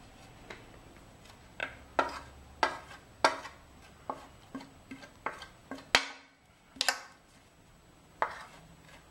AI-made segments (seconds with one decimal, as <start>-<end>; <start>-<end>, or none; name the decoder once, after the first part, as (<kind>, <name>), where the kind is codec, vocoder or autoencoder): none